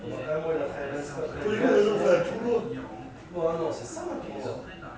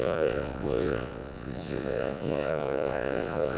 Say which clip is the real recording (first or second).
first